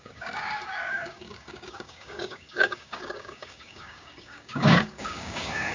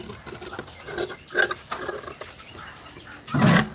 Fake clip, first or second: first